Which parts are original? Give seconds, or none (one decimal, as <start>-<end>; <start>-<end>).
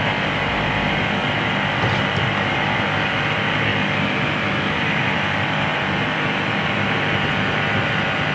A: 1.2-2.5; 3.7-4.4